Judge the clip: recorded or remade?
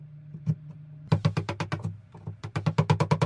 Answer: recorded